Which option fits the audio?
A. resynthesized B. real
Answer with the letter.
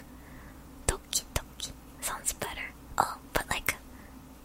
A